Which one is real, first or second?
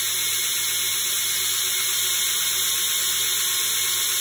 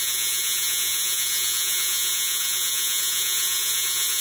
first